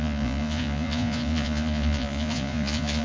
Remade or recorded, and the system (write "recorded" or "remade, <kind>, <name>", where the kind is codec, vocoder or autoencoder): remade, vocoder, Vocos